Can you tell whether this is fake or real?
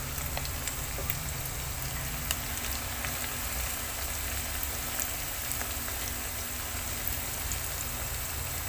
real